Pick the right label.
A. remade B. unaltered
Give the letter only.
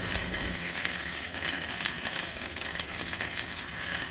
A